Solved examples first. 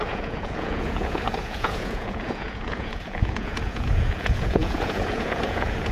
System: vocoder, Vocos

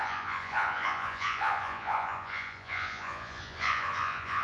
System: vocoder, Vocos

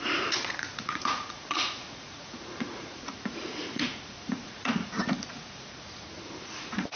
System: vocoder, Vocos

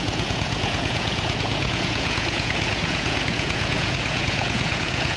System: vocoder, Vocos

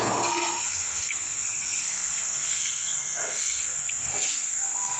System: codec, SNAC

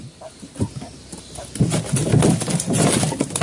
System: none